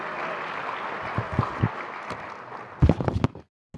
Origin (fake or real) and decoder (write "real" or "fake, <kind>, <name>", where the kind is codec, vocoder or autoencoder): real